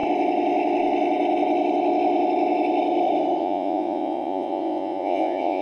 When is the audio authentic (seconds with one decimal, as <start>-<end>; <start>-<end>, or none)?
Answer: 0.0-3.4